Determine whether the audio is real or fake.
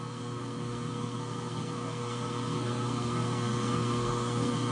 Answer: fake